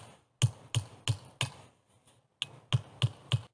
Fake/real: real